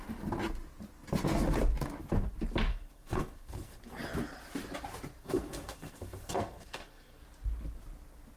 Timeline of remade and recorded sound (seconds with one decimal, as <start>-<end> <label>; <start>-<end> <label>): 0.0-2.7 recorded; 2.7-3.8 remade; 3.8-5.2 recorded; 5.2-7.2 remade; 7.2-8.4 recorded